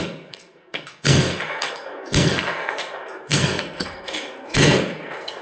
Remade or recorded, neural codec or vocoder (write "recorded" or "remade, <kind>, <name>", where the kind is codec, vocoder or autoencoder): remade, codec, SNAC